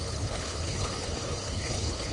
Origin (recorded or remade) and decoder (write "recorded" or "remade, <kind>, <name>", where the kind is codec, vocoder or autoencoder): remade, codec, HILCodec